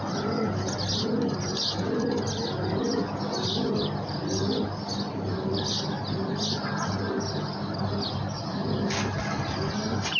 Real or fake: real